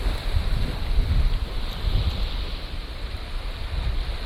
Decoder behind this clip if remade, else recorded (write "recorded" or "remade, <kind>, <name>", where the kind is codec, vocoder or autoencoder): recorded